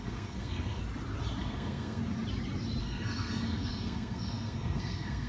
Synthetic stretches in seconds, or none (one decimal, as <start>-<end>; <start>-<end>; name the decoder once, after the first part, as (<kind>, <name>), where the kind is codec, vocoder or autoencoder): 0.0-0.8 (codec, SNAC); 1.4-2.0; 2.8-5.3